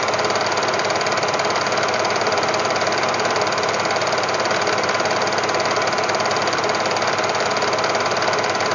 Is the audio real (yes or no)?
no